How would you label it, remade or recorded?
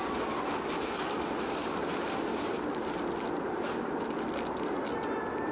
recorded